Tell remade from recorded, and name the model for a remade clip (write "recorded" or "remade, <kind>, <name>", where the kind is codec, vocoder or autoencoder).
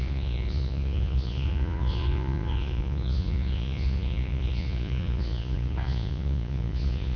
remade, vocoder, Vocos